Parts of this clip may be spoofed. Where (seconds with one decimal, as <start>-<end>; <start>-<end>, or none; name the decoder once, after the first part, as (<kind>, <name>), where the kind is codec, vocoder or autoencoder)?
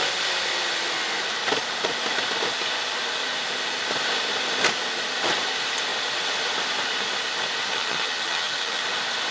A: 7.7-8.8 (vocoder, HiFi-GAN)